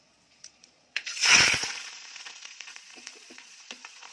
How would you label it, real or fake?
fake